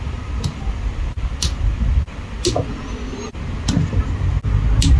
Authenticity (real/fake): real